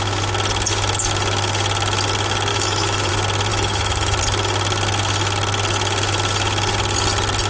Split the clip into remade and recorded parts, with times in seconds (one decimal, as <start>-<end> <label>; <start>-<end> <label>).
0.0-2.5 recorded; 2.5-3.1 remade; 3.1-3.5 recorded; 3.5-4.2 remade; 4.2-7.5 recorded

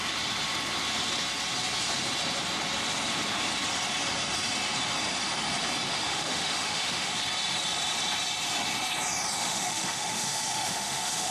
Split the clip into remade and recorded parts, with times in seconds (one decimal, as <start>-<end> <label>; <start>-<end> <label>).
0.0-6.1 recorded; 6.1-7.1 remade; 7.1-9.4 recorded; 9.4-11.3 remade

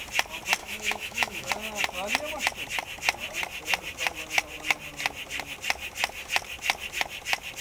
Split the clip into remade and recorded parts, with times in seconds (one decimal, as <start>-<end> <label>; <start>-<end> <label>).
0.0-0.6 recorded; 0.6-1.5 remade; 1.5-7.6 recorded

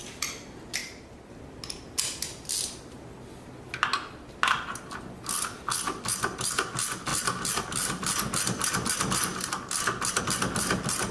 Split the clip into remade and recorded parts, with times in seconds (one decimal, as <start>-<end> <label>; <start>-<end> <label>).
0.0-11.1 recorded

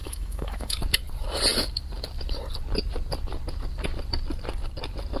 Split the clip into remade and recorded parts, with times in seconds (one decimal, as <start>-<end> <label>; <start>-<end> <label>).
0.0-0.8 remade; 0.8-5.2 recorded

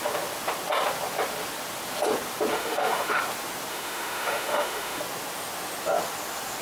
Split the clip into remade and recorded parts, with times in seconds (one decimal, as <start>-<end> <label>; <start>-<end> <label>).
0.0-2.5 recorded; 2.5-3.2 remade; 3.2-3.7 recorded; 3.7-5.0 remade; 5.0-6.6 recorded